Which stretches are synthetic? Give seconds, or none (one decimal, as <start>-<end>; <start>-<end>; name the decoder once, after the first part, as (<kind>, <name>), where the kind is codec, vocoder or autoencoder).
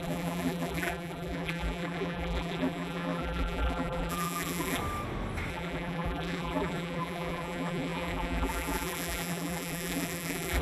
0.0-4.8 (vocoder, BigVGAN v2); 5.5-10.6